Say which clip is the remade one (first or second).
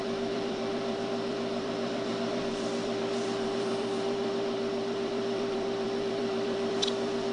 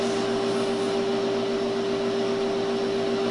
first